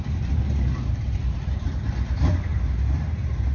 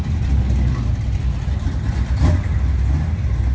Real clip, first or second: second